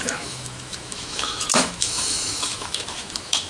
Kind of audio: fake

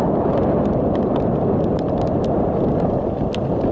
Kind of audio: real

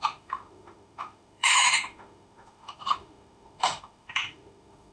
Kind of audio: fake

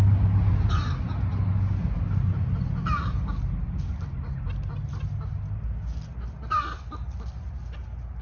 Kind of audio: real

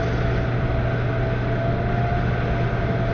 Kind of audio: real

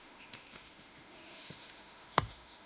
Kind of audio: fake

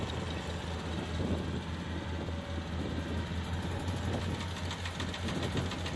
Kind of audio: real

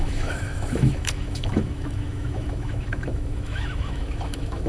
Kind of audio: fake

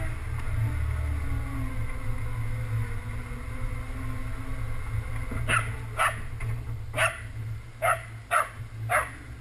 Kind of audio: real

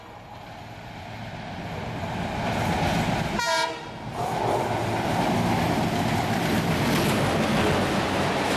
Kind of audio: real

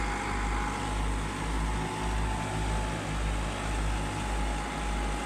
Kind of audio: real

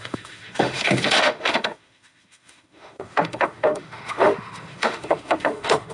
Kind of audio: fake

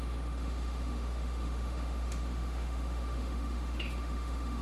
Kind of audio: fake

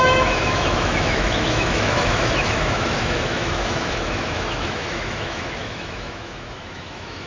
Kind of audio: fake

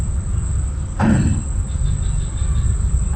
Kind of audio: real